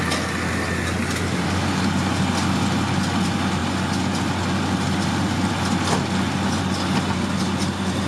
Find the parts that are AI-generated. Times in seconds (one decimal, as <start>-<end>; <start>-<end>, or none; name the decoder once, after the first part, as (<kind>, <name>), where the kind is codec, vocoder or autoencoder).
none